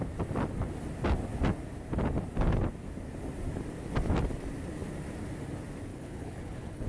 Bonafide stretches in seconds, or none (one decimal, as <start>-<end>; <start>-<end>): 0.0-5.9